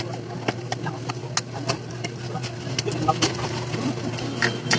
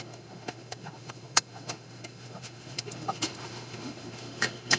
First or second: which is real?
first